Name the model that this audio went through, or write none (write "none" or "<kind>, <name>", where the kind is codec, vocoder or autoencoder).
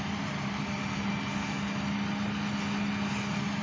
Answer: none